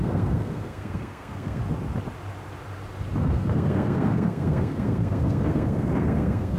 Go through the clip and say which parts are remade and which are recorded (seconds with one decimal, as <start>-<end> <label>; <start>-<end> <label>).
0.0-1.6 remade; 1.6-3.2 recorded; 3.2-6.6 remade